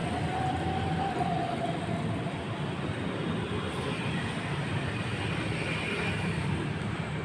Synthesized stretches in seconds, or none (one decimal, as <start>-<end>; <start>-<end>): none